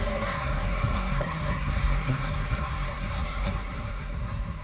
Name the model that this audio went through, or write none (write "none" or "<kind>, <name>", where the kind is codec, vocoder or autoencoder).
codec, SNAC